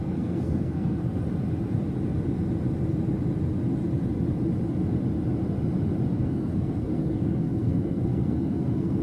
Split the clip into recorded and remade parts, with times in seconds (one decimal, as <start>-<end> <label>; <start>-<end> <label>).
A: 0.0-1.2 remade; 1.2-6.1 recorded; 6.1-9.0 remade